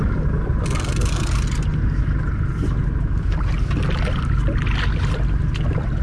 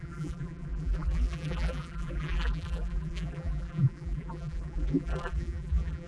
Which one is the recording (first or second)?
first